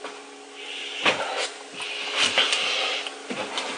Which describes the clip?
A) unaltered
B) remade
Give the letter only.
A